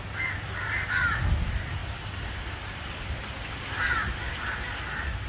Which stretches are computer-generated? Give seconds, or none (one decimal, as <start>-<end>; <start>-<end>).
none